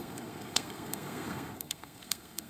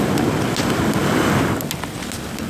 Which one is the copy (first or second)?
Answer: first